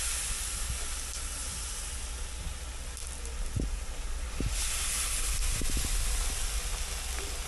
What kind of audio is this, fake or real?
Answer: real